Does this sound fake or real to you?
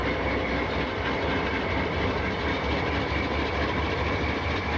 real